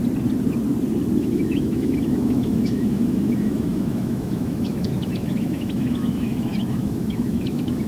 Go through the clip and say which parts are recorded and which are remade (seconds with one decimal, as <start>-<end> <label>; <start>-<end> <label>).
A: 0.0-1.2 recorded; 1.2-7.9 remade